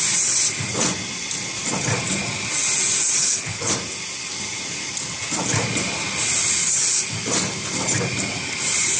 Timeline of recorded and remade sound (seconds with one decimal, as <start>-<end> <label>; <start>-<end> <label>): 0.0-3.2 recorded; 3.2-3.7 remade; 3.7-9.0 recorded